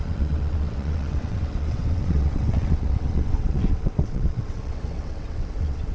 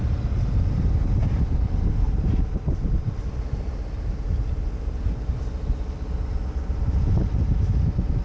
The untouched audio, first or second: second